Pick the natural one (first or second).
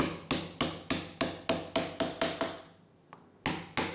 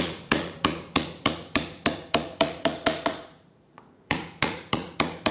first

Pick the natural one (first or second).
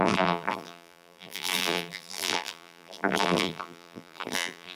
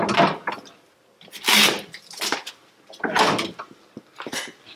second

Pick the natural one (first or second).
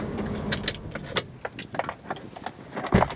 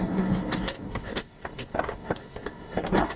first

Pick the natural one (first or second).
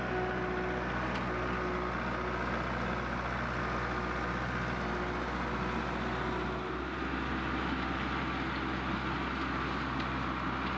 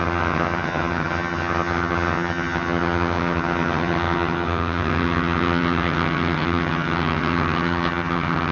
first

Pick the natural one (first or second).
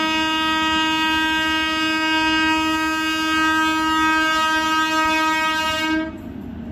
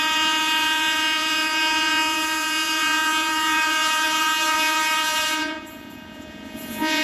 first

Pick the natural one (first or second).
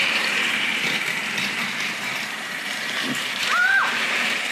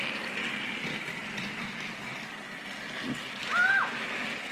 second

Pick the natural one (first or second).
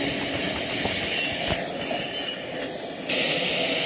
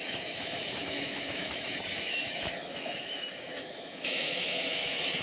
first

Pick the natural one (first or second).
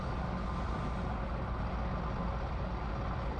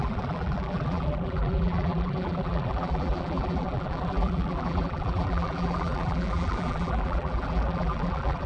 first